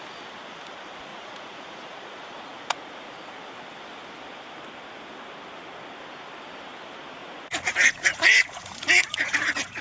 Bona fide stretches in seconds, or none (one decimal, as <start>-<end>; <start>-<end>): 0.0-1.1; 3.4-7.2